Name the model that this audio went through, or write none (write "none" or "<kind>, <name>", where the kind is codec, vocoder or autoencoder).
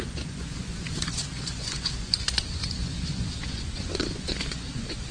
vocoder, Vocos